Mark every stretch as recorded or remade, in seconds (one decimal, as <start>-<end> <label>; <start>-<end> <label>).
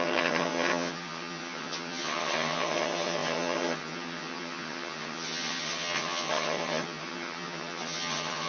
0.0-8.5 remade